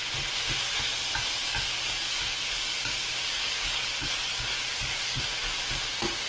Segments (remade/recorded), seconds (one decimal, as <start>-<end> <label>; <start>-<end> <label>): 0.0-1.4 recorded; 1.4-5.2 remade; 5.2-6.3 recorded